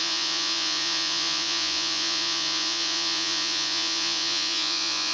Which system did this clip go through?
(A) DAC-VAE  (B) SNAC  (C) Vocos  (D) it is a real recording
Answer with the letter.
C